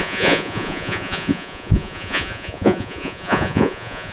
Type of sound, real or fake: fake